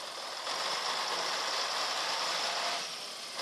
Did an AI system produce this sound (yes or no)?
no